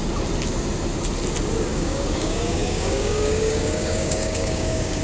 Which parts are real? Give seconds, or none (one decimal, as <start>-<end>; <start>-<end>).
0.0-1.7